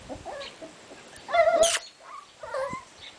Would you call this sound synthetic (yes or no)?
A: no